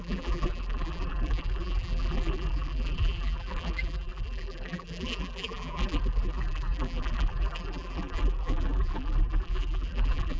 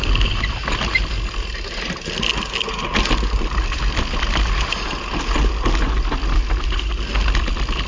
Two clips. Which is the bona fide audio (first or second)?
second